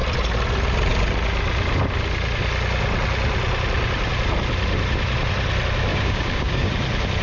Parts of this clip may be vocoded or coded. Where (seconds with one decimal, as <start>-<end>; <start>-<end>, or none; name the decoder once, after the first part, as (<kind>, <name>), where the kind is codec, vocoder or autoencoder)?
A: 5.9-6.7 (codec, DAC)